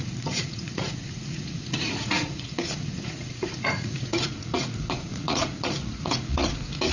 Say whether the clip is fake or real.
fake